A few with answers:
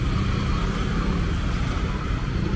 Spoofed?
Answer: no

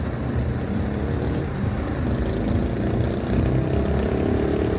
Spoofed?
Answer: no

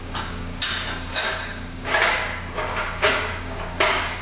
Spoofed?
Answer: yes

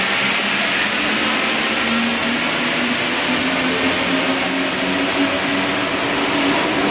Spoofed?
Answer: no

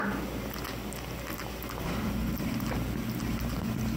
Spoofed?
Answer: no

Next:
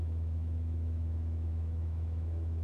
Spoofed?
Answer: yes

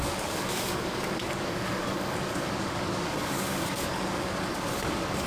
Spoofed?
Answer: yes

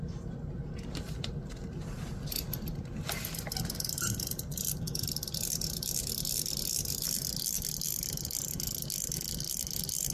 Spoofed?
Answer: no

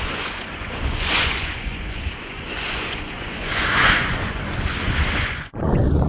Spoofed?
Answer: yes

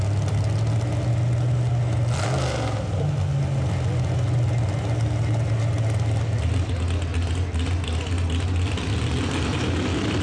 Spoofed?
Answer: no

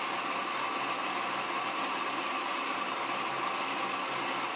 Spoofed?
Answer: no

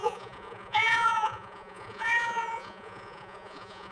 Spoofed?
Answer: yes